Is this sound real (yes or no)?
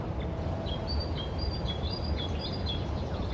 yes